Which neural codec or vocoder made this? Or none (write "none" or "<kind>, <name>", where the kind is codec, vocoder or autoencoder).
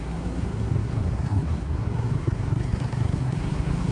codec, SNAC